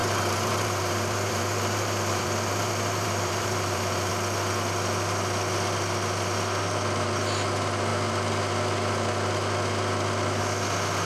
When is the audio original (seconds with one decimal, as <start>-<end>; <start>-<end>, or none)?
4.1-11.1